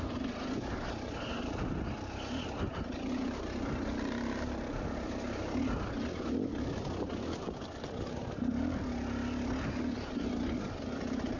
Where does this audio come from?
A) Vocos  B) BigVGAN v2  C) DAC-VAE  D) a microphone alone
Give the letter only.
D